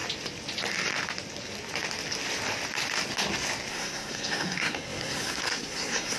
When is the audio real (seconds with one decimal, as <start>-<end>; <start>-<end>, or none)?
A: 0.0-3.7